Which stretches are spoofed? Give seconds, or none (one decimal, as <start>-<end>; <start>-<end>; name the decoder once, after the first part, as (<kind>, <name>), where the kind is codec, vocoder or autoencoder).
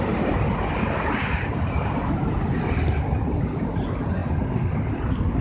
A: none